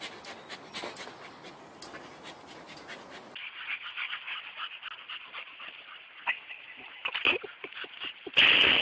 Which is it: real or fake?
real